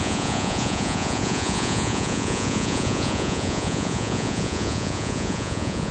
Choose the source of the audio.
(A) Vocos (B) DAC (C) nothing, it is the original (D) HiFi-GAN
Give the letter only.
A